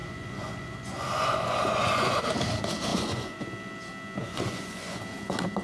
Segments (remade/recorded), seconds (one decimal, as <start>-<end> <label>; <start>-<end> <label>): 0.0-2.2 remade; 2.2-2.9 recorded; 2.9-3.4 remade; 3.4-4.2 recorded; 4.2-5.0 remade; 5.0-5.6 recorded